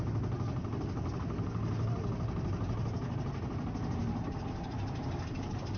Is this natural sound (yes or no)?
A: yes